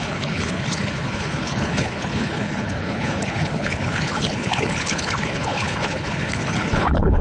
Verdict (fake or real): fake